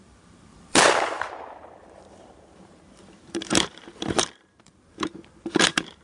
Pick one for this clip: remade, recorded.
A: remade